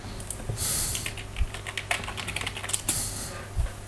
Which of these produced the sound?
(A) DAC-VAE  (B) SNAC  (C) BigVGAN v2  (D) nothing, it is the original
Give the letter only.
D